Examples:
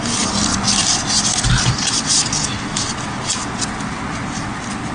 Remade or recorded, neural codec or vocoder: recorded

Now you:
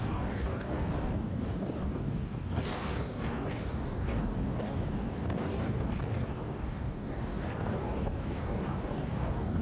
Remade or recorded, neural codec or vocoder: remade, codec, DAC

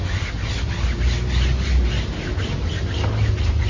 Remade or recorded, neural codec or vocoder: recorded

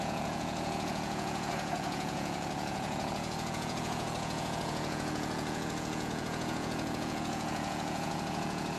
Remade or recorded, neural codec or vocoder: remade, vocoder, Vocos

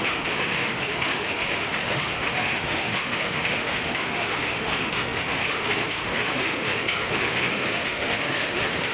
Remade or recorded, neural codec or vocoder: remade, autoencoder, DAC-VAE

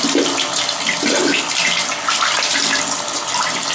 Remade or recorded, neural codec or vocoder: recorded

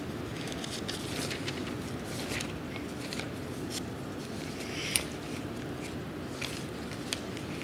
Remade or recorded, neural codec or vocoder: recorded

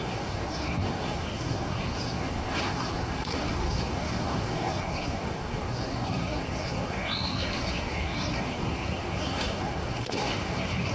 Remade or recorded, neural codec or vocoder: remade, codec, SNAC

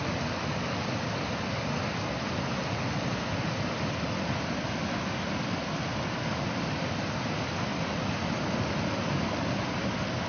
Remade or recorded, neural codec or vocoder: recorded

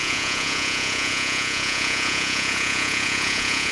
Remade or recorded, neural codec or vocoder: remade, vocoder, Vocos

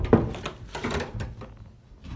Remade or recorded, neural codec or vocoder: recorded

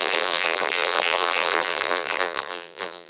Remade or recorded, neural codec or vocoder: remade, vocoder, BigVGAN v2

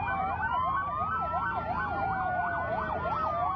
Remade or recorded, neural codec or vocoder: recorded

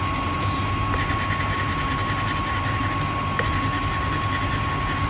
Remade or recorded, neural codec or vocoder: recorded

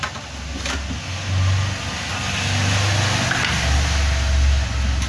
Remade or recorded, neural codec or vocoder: recorded